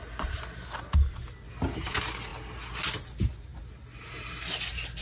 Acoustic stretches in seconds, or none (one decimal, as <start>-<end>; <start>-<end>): 0.0-5.0